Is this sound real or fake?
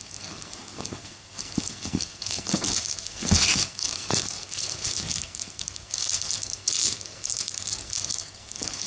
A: fake